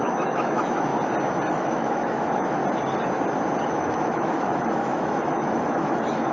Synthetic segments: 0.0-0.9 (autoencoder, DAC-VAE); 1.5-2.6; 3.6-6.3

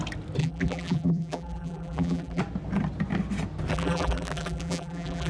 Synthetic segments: 0.4-2.4 (vocoder, BigVGAN v2); 3.7-5.3

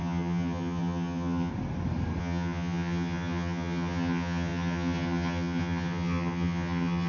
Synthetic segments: 0.0-1.5 (vocoder, HiFi-GAN); 2.2-7.1

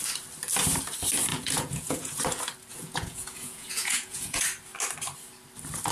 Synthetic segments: 1.3-2.2 (vocoder, Vocos); 2.7-4.4

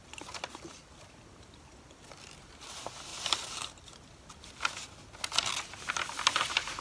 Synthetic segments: none

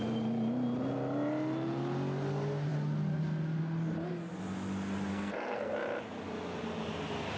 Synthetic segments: 5.1-5.7 (codec, SNAC)